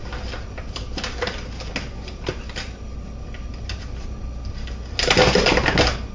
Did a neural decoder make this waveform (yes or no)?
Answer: no